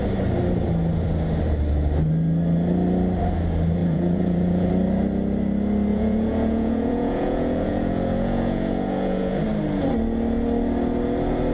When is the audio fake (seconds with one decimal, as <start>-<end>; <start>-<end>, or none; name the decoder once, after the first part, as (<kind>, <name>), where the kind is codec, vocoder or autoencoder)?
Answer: 3.8-4.7 (vocoder, Vocos); 5.9-9.4